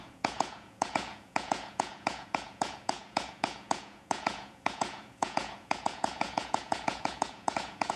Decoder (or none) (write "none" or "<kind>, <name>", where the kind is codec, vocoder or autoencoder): vocoder, Vocos